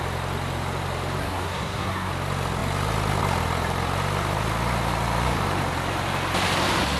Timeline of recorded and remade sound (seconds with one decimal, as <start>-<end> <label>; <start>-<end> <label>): 0.0-1.2 recorded; 1.2-2.1 remade; 2.1-7.0 recorded